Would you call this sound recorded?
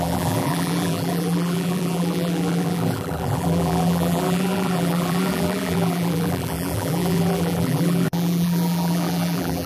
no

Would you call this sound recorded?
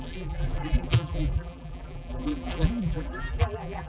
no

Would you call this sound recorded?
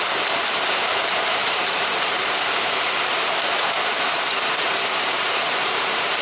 no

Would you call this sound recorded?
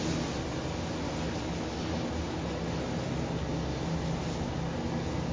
yes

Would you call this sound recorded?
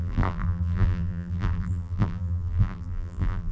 no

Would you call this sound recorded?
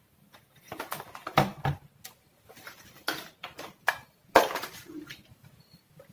no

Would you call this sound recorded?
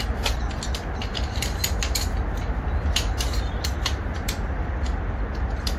yes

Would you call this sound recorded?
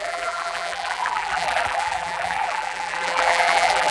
no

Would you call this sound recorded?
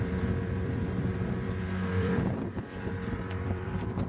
no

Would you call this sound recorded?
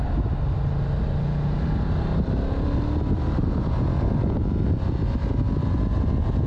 yes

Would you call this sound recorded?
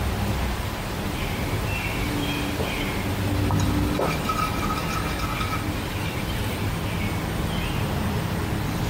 yes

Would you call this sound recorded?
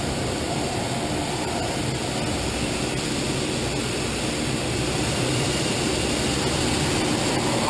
yes